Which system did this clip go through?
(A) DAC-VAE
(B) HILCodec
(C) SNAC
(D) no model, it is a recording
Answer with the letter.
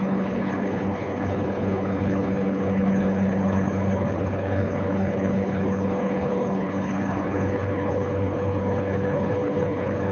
B